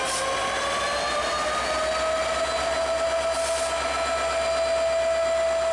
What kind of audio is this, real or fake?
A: real